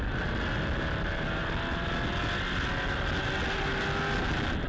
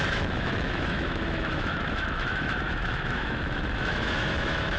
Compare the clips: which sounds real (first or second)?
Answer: first